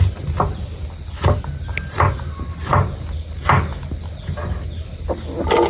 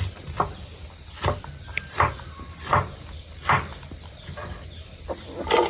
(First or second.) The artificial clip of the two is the second